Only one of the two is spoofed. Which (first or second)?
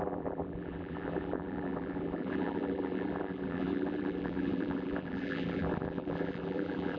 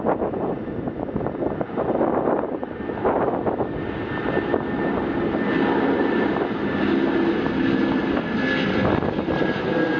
first